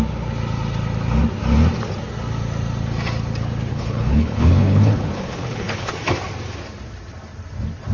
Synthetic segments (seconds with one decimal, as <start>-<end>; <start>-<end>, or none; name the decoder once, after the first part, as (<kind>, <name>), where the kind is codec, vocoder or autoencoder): 3.7-5.9 (codec, HILCodec)